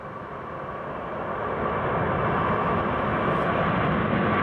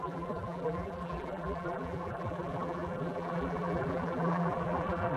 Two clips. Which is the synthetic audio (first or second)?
second